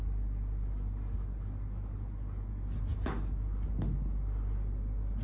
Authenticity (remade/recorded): recorded